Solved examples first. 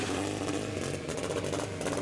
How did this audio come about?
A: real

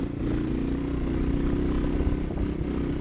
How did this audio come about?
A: real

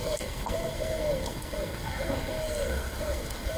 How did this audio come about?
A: fake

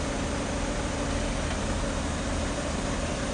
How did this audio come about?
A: real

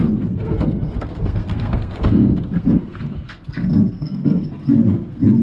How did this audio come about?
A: fake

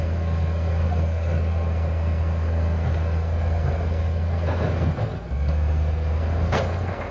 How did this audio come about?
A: fake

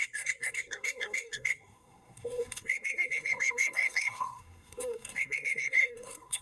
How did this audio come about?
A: fake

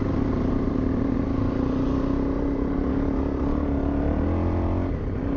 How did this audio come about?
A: real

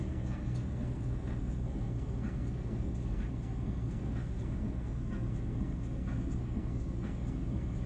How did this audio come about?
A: fake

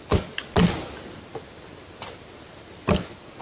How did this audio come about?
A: real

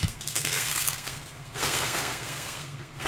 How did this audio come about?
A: fake